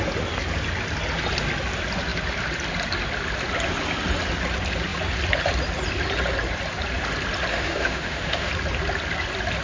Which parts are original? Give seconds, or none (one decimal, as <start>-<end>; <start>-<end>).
0.0-7.5; 8.5-9.6